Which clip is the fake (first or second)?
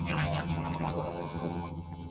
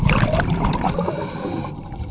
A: first